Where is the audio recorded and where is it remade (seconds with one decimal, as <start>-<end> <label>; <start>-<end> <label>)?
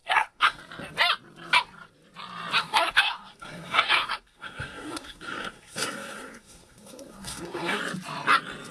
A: 0.0-0.6 remade; 0.6-2.6 recorded; 2.6-7.8 remade; 7.8-8.7 recorded